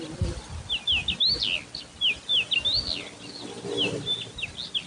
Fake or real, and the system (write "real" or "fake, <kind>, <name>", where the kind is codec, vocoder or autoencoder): real